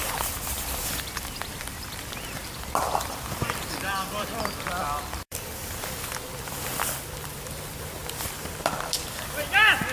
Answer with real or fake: fake